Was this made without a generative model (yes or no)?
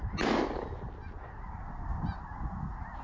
yes